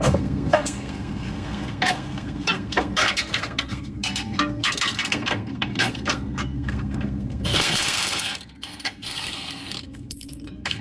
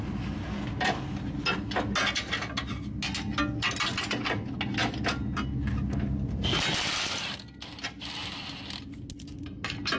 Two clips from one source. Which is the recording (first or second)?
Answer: second